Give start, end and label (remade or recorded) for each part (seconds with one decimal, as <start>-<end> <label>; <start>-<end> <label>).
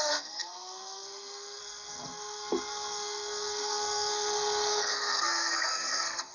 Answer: 0.0-6.3 remade